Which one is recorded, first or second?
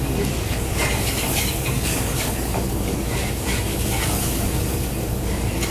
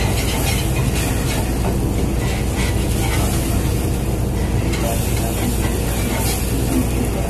second